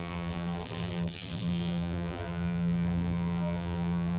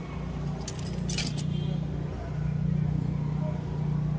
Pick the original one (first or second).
second